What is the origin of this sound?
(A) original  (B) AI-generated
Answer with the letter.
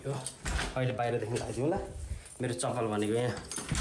A